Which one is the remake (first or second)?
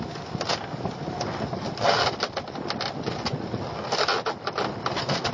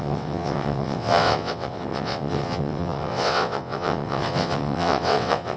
second